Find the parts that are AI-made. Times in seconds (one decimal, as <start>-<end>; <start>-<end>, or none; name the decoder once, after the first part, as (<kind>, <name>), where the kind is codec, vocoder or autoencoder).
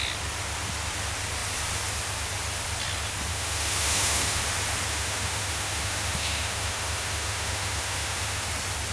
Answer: 3.3-4.4 (autoencoder, DAC-VAE); 4.9-8.5